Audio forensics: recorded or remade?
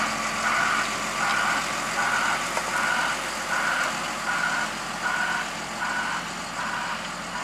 recorded